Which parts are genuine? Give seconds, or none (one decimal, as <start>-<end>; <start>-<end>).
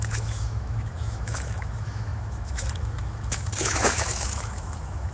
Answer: none